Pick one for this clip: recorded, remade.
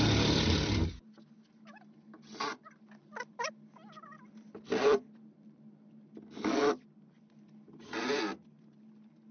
recorded